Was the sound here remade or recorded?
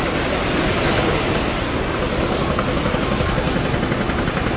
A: recorded